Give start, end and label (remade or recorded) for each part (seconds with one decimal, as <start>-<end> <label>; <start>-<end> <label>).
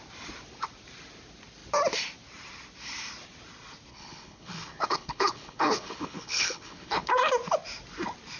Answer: 0.0-3.9 recorded; 3.9-7.2 remade; 7.2-8.4 recorded